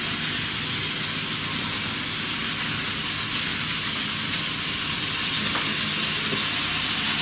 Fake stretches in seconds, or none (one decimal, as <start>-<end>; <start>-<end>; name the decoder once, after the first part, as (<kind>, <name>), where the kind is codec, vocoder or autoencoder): none